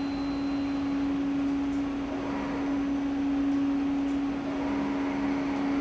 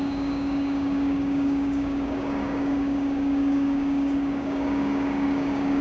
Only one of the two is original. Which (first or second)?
first